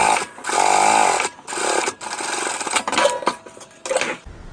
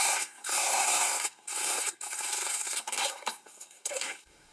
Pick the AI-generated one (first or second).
second